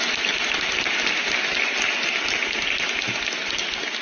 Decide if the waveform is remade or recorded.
recorded